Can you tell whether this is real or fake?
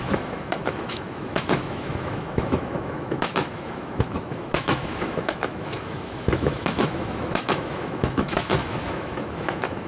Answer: fake